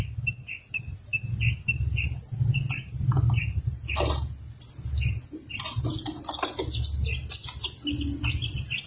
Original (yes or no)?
yes